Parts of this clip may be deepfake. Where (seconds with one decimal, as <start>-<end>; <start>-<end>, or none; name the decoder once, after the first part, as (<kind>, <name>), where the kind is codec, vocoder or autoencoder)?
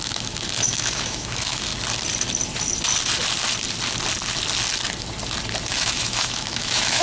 0.0-1.7 (autoencoder, DAC-VAE); 5.7-7.0